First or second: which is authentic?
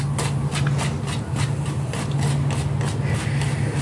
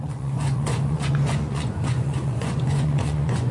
first